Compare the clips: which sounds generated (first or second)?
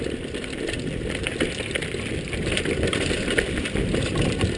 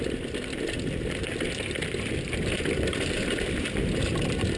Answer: first